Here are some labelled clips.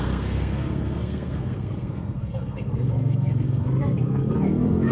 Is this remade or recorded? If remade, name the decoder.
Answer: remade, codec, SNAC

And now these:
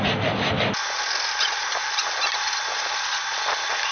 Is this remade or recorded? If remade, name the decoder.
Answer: recorded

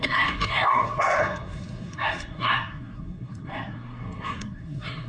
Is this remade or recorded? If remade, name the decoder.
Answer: remade, codec, SNAC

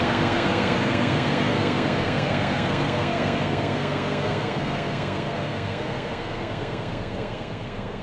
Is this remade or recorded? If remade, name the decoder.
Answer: remade, codec, SNAC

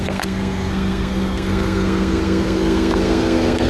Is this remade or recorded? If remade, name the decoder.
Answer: remade, codec, SNAC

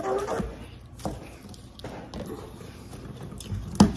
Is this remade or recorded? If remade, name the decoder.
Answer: recorded